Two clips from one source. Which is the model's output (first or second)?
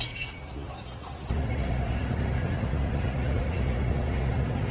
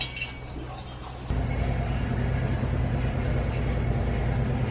first